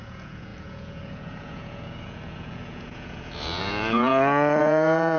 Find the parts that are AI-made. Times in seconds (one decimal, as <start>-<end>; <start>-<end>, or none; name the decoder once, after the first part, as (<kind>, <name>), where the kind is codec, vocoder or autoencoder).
0.0-4.1 (vocoder, Vocos); 4.6-5.2